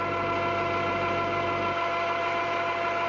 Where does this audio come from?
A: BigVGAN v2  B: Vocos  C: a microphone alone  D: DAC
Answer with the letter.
C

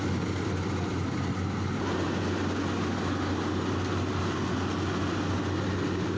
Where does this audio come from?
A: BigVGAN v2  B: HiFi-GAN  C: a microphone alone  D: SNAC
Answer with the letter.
C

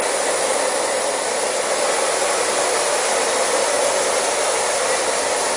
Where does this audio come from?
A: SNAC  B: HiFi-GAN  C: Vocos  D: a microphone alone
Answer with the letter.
D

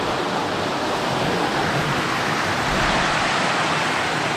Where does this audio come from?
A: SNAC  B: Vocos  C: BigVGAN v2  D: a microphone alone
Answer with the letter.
D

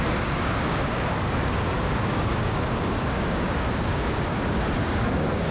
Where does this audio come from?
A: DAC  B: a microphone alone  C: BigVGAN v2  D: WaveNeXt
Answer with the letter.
A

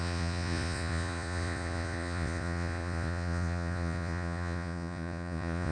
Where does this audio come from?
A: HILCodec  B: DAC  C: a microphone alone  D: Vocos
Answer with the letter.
D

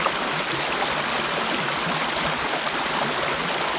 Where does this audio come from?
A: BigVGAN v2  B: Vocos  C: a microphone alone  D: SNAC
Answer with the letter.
C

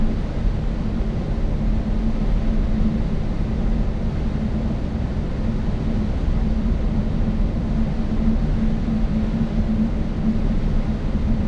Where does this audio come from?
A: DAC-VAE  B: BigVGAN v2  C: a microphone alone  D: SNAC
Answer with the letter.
C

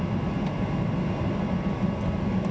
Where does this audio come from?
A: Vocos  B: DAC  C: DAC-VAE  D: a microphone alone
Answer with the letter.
D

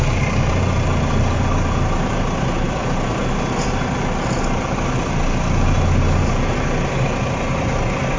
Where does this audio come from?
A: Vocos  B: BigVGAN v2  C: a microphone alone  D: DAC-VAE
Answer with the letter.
C